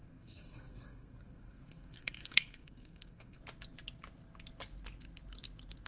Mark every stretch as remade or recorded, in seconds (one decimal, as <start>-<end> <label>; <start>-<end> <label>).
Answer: 0.0-3.4 remade; 3.4-5.9 recorded